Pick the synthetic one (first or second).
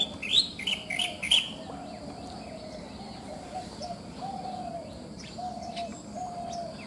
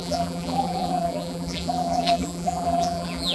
second